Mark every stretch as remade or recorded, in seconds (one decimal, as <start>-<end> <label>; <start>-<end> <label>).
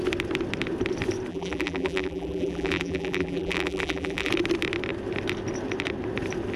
0.0-1.3 recorded; 1.3-4.3 remade; 4.3-6.6 recorded